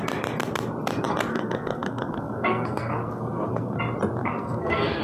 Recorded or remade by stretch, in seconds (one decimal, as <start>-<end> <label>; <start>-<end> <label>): 0.0-1.3 recorded; 1.3-3.8 remade; 3.8-4.2 recorded; 4.2-5.0 remade

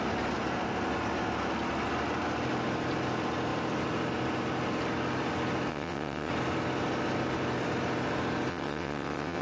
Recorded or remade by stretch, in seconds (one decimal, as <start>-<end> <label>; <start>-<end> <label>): 0.0-5.7 recorded; 5.7-6.3 remade; 6.3-8.5 recorded; 8.5-9.4 remade

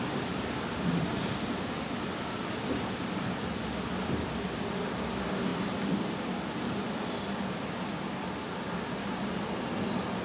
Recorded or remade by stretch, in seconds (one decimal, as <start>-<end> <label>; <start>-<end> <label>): 0.0-10.2 recorded

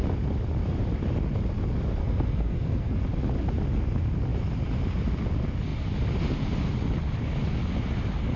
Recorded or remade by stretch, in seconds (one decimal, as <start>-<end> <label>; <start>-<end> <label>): 0.0-2.0 recorded; 2.0-3.0 remade; 3.0-8.4 recorded